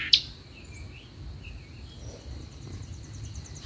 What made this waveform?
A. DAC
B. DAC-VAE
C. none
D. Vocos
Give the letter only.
C